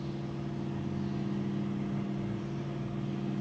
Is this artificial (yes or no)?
no